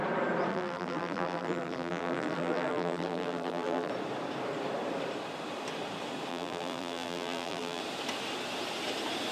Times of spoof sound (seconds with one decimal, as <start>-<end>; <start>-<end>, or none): 0.5-3.9; 6.3-7.8